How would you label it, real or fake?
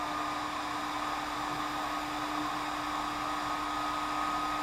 real